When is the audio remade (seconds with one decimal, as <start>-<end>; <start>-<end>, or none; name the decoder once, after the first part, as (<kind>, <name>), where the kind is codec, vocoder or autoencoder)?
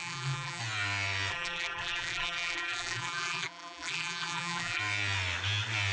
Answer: 0.0-0.6 (vocoder, BigVGAN v2); 1.3-4.8